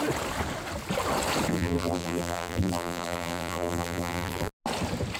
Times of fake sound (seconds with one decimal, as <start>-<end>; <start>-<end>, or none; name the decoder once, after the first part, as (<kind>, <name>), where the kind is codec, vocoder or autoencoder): 1.5-4.5 (vocoder, BigVGAN v2)